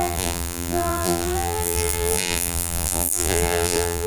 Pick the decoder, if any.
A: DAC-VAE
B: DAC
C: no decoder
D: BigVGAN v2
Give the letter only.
D